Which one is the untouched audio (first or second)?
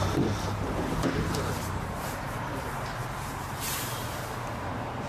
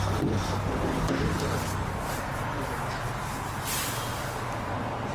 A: second